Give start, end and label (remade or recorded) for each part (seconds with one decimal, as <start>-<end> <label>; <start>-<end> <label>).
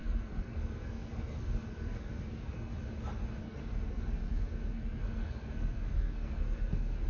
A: 0.0-2.7 remade; 2.7-3.4 recorded; 3.4-7.1 remade